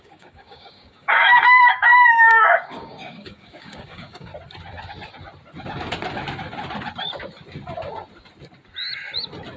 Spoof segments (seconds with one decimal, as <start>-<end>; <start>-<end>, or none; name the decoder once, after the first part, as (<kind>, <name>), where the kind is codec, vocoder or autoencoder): 0.0-4.3 (codec, DAC)